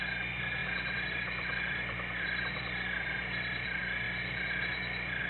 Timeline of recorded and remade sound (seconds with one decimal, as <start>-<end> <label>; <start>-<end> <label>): 0.0-0.6 recorded; 0.6-3.8 remade; 3.8-5.3 recorded